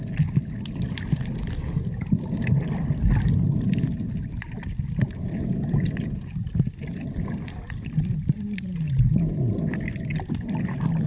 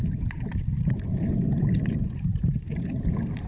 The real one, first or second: first